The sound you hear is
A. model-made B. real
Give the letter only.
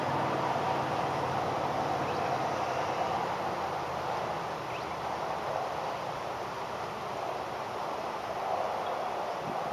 B